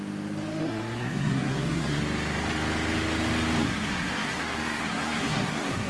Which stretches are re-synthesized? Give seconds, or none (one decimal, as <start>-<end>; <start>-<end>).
0.6-2.0; 3.6-5.9